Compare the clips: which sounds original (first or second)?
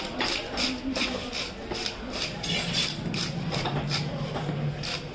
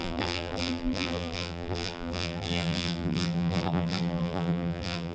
first